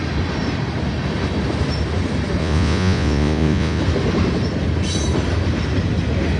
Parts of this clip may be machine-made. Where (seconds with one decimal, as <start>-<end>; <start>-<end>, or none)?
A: 2.4-3.8